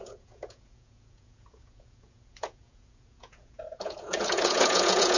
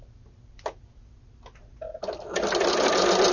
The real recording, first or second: second